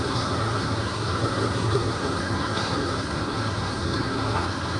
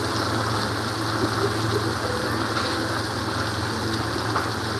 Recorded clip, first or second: second